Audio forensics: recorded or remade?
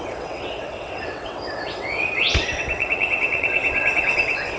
remade